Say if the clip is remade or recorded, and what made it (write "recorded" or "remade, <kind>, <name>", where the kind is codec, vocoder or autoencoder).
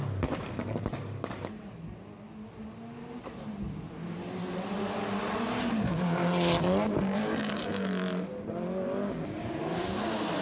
recorded